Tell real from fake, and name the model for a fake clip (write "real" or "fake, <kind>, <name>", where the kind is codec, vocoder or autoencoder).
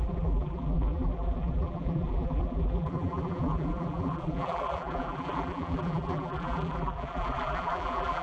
fake, vocoder, BigVGAN v2